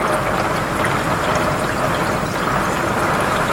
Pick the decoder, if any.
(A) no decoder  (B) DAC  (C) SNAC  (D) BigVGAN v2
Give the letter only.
A